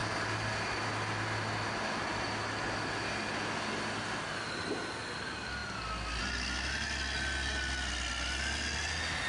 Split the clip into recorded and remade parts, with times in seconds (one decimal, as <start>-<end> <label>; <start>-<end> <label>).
0.0-9.3 recorded